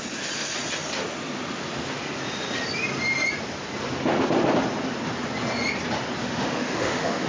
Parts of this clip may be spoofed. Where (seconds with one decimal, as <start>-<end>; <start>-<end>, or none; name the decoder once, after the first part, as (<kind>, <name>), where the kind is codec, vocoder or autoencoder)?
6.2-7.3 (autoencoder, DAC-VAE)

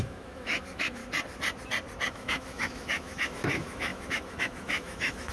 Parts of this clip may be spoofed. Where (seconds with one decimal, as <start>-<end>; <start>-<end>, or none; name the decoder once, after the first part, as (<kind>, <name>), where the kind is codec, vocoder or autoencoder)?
0.0-1.0 (autoencoder, DAC-VAE); 2.1-5.3

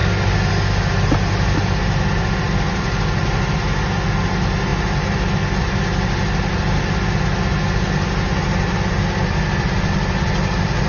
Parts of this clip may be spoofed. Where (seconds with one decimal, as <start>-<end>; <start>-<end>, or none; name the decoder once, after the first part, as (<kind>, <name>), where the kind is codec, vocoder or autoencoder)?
none

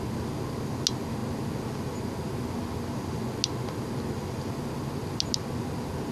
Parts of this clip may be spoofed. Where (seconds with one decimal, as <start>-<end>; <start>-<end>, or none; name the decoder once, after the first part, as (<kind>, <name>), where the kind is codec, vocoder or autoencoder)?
none

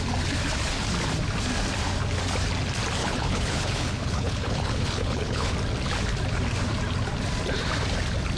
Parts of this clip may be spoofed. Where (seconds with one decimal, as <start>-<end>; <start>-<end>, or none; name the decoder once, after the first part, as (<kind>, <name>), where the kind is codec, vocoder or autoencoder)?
3.0-5.5 (codec, HILCodec)

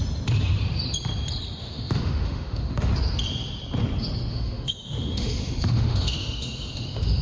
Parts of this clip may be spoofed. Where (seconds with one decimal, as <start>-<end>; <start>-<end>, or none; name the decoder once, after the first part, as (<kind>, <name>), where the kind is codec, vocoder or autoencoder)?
1.6-2.9 (autoencoder, DAC-VAE); 4.3-7.2

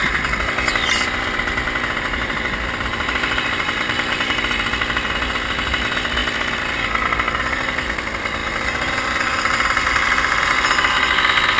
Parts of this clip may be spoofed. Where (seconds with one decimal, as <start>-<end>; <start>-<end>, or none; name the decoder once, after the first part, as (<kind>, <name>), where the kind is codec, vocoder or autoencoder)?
2.9-4.4 (vocoder, BigVGAN v2); 8.4-10.3

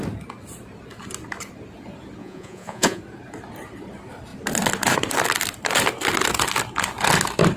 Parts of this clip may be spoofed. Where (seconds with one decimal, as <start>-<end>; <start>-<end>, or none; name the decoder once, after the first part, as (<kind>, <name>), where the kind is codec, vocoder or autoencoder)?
2.2-3.0 (vocoder, Vocos)